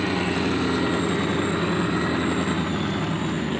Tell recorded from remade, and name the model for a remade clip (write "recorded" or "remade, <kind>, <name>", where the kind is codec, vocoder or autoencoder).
recorded